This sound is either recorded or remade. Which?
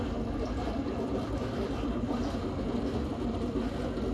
recorded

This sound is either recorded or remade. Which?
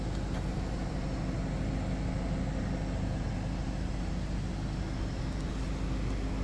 recorded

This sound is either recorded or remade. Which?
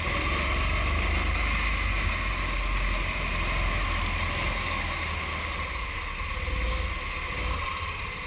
recorded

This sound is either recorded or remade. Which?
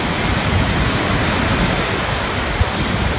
recorded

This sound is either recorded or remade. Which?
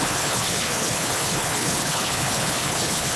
remade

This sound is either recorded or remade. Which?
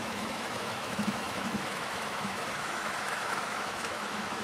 remade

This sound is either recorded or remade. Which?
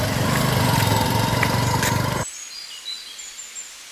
recorded